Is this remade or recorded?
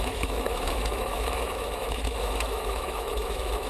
remade